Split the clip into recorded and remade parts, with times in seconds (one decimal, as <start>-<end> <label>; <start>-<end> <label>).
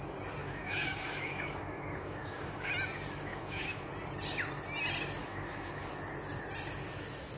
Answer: 0.0-0.4 recorded; 0.4-2.7 remade; 2.7-3.3 recorded; 3.3-3.9 remade; 3.9-5.2 recorded; 5.2-5.9 remade; 5.9-7.4 recorded